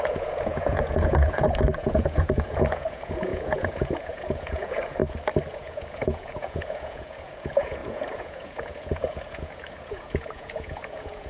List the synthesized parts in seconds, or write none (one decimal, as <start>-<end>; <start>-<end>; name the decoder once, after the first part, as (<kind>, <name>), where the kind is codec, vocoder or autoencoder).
0.0-5.0 (vocoder, Vocos); 5.5-11.3